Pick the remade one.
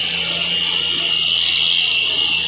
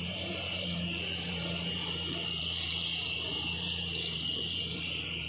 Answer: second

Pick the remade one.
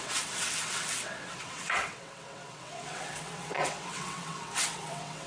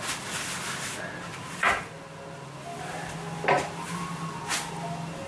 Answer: first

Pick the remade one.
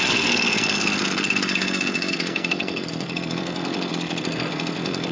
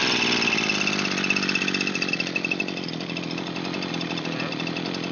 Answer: first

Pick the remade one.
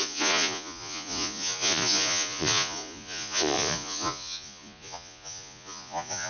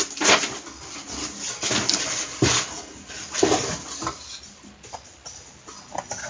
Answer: first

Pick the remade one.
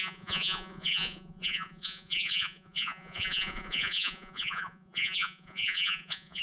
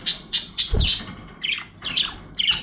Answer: first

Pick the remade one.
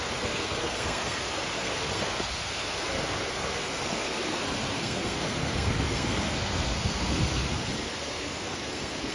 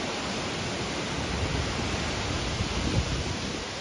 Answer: first